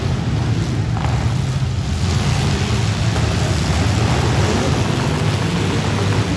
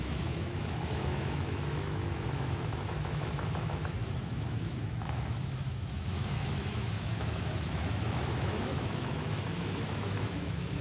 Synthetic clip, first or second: second